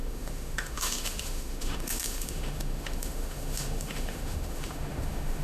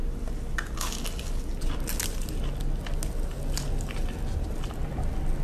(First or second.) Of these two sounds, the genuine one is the second